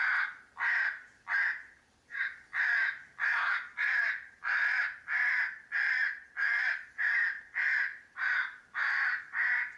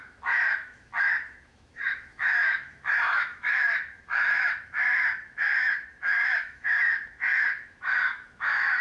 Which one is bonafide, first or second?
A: first